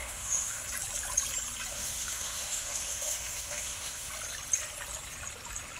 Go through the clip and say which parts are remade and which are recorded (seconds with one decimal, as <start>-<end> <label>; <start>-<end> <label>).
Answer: 0.0-0.6 remade; 0.6-1.7 recorded; 1.7-4.1 remade; 4.1-5.8 recorded